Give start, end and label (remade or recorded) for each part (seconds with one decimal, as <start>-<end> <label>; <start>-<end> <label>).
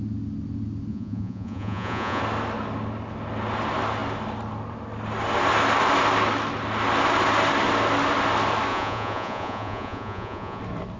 0.0-0.9 recorded; 0.9-2.2 remade; 2.2-8.7 recorded; 8.7-10.6 remade; 10.6-11.0 recorded